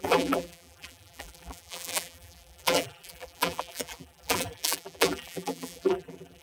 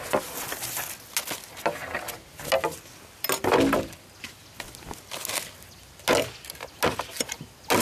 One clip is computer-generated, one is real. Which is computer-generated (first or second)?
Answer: first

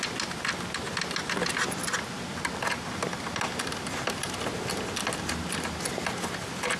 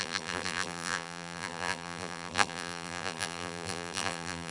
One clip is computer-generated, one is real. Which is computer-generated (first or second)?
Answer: second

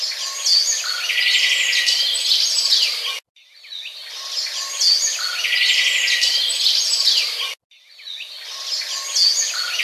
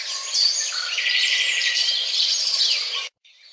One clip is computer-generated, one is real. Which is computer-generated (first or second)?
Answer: second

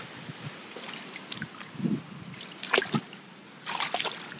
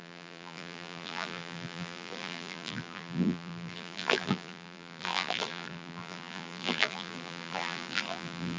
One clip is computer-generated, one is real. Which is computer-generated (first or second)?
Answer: second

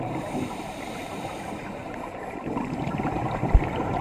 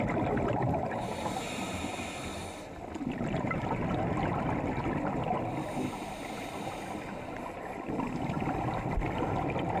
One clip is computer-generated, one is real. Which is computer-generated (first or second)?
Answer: first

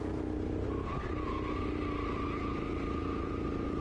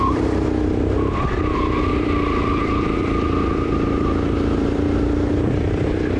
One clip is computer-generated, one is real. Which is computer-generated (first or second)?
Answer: second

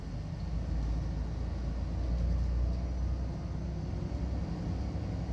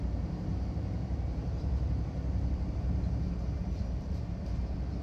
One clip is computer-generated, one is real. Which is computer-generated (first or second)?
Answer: second